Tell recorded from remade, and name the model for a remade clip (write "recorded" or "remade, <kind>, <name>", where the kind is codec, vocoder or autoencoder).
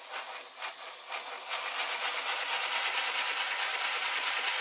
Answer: recorded